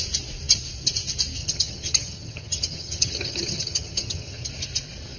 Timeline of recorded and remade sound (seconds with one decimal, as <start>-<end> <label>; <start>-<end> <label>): 0.0-1.4 recorded; 1.4-4.5 remade; 4.5-5.2 recorded